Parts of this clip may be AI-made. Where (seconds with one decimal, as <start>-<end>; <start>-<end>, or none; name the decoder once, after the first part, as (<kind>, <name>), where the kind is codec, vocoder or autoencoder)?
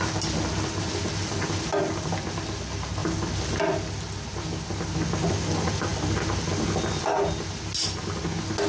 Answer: none